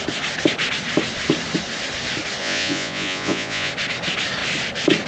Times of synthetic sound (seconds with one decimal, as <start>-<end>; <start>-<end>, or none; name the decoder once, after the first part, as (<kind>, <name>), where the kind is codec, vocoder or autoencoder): 2.4-3.7 (vocoder, Vocos)